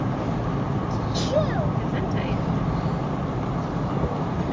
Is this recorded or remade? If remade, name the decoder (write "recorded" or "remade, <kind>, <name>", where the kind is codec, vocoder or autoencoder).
recorded